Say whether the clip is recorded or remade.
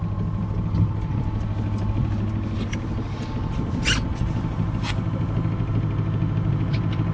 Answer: recorded